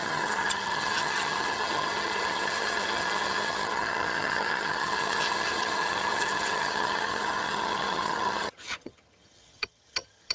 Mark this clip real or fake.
fake